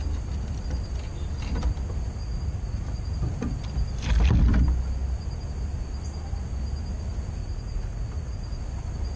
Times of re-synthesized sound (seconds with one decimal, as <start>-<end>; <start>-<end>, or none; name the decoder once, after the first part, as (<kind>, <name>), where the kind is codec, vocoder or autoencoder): 2.2-3.1 (vocoder, Vocos); 7.4-8.6